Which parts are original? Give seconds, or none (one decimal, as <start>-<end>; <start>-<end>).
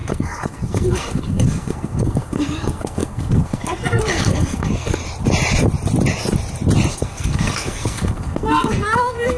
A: 5.0-6.9